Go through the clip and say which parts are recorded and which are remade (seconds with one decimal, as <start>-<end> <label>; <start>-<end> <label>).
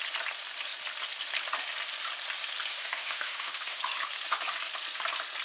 0.0-2.7 recorded; 2.7-3.8 remade; 3.8-5.4 recorded